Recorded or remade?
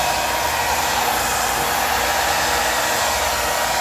recorded